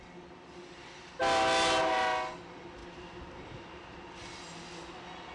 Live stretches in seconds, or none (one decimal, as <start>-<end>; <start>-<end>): 0.0-5.3